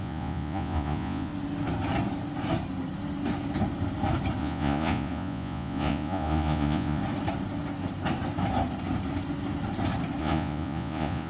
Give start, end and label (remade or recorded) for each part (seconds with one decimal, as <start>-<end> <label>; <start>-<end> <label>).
0.0-1.3 remade; 1.3-4.4 recorded; 4.4-7.0 remade; 7.0-10.2 recorded; 10.2-11.3 remade